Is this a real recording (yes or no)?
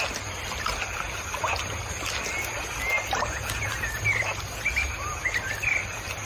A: yes